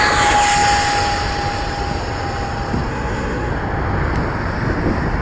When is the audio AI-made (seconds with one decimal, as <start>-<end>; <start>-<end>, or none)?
2.9-3.5